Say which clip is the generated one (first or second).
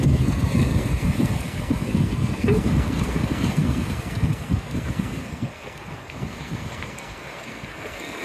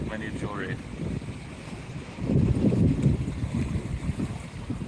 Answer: first